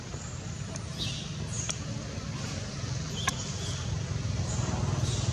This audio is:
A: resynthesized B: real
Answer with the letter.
B